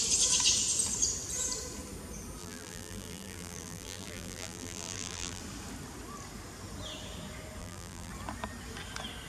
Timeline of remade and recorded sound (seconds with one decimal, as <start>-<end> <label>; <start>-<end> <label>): 0.0-2.4 recorded; 2.4-5.4 remade; 5.4-7.6 recorded; 7.6-8.1 remade; 8.1-9.3 recorded